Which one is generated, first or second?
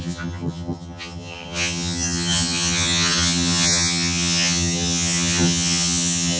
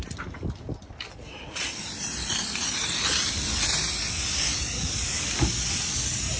first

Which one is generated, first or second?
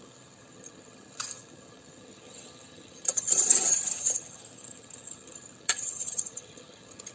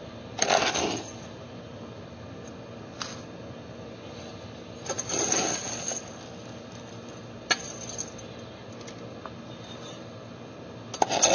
first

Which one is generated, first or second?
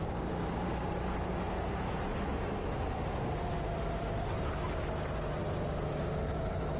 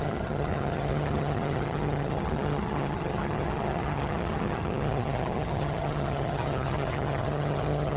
second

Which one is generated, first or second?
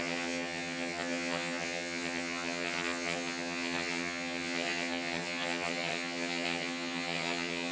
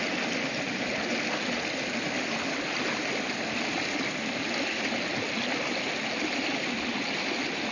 first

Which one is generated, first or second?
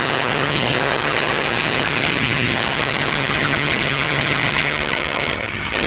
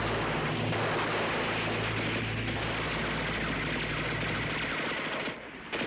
first